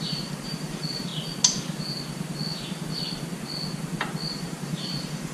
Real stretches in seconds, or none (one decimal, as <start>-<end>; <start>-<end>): 1.1-4.3